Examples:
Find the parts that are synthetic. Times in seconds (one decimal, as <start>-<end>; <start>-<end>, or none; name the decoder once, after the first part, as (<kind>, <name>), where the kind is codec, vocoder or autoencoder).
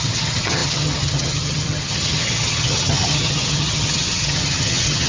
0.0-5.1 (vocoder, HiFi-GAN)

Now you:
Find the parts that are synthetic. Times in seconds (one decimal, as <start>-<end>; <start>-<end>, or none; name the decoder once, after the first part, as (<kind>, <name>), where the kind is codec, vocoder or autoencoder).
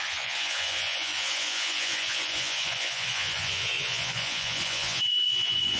0.0-5.8 (vocoder, Vocos)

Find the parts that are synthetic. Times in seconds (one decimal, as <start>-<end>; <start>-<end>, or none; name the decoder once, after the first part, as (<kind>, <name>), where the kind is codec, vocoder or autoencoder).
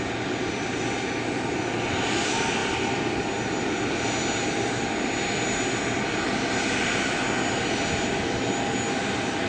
none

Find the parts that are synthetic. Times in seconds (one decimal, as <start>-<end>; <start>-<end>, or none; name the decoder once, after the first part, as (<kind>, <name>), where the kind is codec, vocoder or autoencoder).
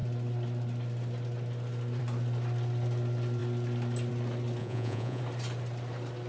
4.6-5.2 (vocoder, Vocos)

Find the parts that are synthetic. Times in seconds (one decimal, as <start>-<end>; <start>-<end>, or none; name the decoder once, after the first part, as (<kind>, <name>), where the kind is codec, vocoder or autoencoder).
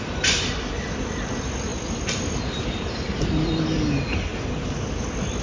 none